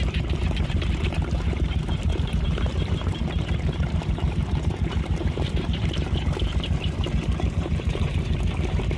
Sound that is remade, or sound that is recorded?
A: remade